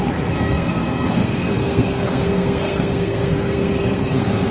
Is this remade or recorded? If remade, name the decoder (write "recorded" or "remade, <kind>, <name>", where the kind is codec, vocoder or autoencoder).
remade, codec, SNAC